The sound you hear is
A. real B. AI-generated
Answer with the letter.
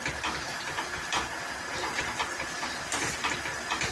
A